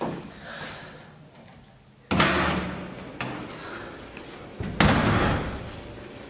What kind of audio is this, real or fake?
real